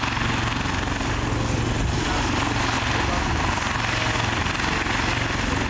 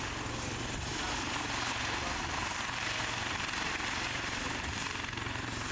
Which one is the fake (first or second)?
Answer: second